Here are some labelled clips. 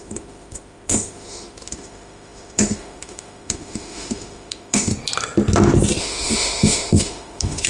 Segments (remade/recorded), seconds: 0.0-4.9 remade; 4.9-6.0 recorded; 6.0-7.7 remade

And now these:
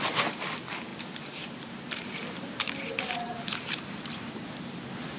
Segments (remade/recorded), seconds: 0.0-0.9 recorded; 0.9-4.0 remade; 4.0-5.2 recorded

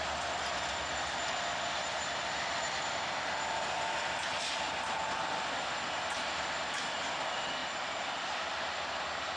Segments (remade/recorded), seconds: 0.0-9.4 recorded

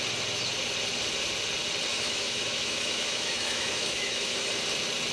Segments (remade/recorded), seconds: 0.0-1.9 recorded; 1.9-4.5 remade; 4.5-5.1 recorded

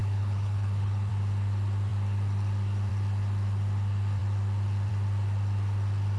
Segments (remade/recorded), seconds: 0.0-1.1 remade; 1.1-6.2 recorded

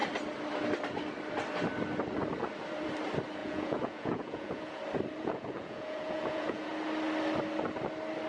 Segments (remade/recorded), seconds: 0.0-3.4 recorded; 3.4-4.8 remade; 4.8-5.2 recorded; 5.2-6.7 remade; 6.7-8.3 recorded